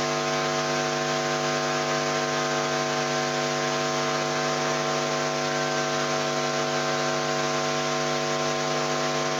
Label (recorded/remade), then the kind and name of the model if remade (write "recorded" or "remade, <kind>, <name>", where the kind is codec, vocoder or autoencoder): recorded